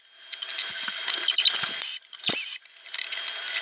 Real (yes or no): yes